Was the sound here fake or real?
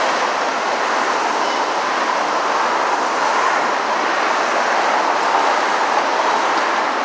real